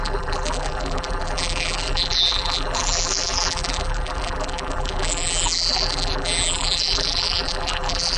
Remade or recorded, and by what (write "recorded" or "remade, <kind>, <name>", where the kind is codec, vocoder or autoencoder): remade, vocoder, BigVGAN v2